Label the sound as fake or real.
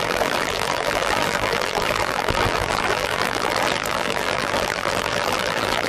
fake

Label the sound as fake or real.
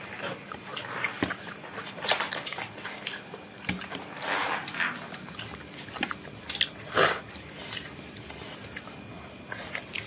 real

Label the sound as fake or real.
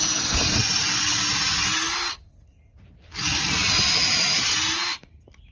real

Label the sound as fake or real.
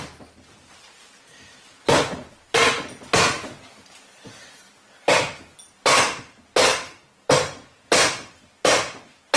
real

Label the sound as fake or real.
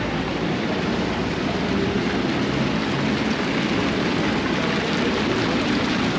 real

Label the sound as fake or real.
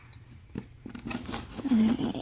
fake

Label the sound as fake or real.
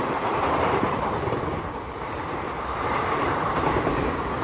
fake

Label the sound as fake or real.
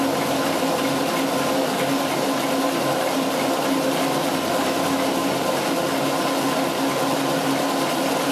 real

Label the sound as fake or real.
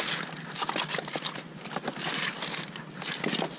real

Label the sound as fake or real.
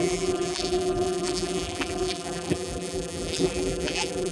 fake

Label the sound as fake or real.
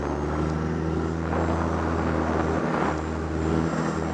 real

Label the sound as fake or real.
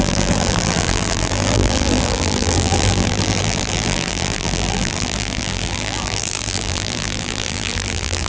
fake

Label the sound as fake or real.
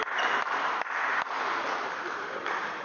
fake